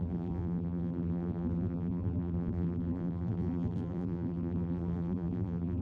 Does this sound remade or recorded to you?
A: remade